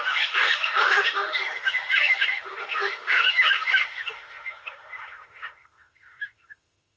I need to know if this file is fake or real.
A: fake